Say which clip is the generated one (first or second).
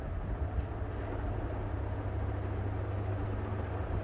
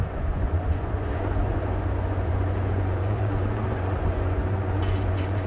second